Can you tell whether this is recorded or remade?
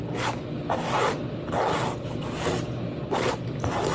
recorded